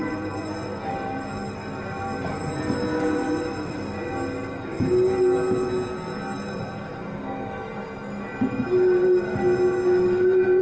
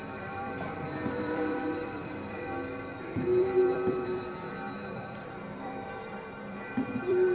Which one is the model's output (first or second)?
second